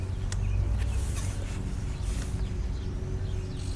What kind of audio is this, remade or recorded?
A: recorded